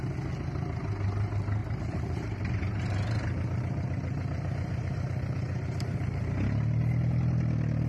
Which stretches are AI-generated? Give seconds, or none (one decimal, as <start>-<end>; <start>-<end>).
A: 1.6-6.3